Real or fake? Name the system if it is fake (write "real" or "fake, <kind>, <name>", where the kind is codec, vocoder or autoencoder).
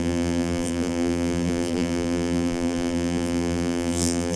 fake, vocoder, BigVGAN v2